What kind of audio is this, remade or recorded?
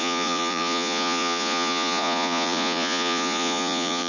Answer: remade